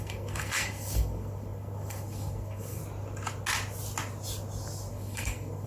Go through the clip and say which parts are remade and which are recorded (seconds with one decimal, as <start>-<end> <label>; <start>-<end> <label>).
0.0-2.8 remade; 2.8-4.9 recorded; 4.9-5.7 remade